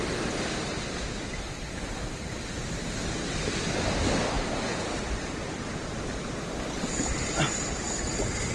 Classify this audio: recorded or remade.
recorded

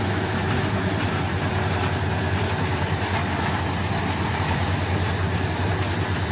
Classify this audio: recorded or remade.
recorded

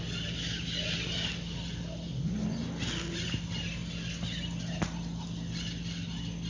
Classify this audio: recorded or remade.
recorded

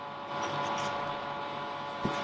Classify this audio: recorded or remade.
recorded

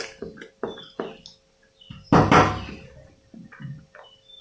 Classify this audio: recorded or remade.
recorded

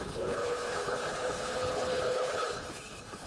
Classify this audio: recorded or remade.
remade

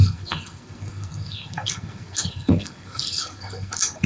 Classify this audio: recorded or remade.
remade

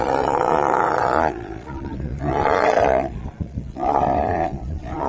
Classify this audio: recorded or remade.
remade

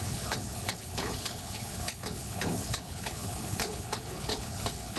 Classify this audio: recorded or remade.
remade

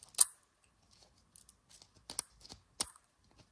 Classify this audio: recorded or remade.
recorded